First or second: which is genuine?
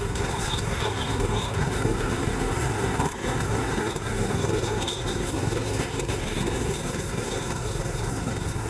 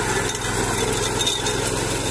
second